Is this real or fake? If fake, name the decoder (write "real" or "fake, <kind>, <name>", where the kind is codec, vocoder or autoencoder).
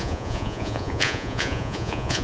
fake, vocoder, Vocos